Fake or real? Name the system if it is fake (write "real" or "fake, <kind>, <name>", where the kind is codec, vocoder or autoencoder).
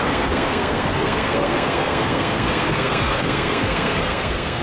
fake, codec, SNAC